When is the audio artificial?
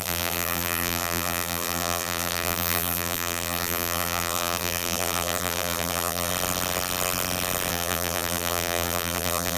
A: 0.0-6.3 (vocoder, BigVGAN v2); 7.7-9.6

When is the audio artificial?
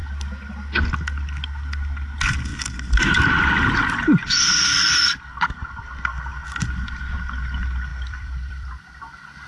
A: 4.2-4.9 (vocoder, BigVGAN v2); 7.9-9.5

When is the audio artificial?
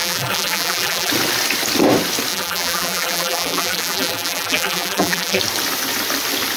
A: 0.0-1.1 (vocoder, BigVGAN v2); 2.3-5.4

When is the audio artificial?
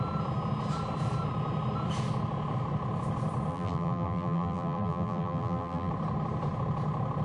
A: 3.5-5.9 (vocoder, BigVGAN v2)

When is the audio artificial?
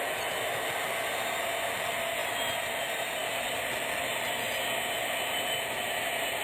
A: 2.2-2.8 (vocoder, BigVGAN v2); 3.2-6.4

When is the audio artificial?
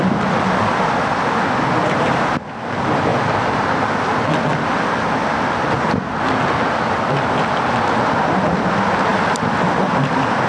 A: 1.8-2.6 (vocoder, BigVGAN v2); 3.1-3.8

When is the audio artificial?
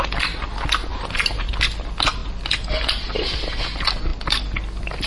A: 0.9-1.5 (vocoder, BigVGAN v2)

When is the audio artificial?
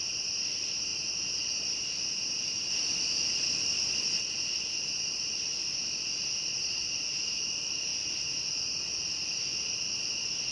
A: 0.0-7.9 (vocoder, BigVGAN v2); 8.5-10.5